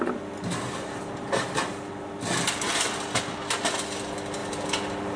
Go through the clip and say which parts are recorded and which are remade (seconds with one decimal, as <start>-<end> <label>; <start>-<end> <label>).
0.0-5.2 recorded